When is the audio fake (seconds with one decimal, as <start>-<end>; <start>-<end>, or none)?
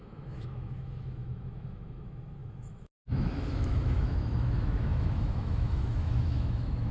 0.0-6.9